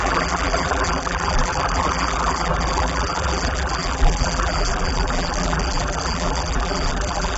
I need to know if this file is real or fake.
fake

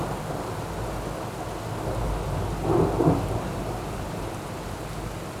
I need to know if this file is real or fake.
real